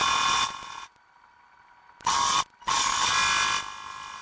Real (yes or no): yes